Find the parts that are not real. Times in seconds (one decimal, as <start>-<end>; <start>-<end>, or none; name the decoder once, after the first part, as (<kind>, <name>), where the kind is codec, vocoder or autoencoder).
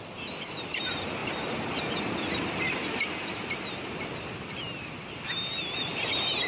none